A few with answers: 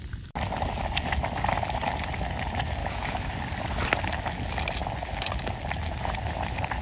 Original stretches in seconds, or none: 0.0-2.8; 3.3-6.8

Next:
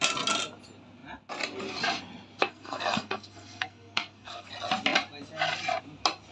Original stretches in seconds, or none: 0.0-2.4; 4.5-6.3